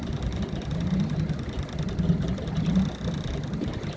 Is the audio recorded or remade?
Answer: recorded